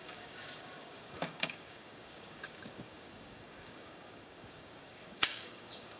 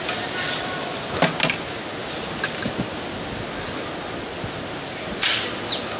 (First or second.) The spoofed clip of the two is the first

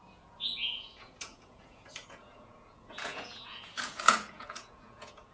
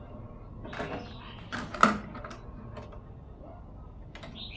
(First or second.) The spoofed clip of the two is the first